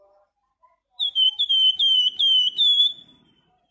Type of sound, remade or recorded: remade